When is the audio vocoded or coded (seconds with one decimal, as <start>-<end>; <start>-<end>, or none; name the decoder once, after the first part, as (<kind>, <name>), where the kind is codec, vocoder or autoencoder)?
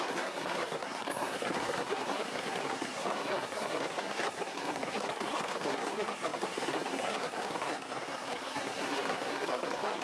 0.0-10.0 (codec, SNAC)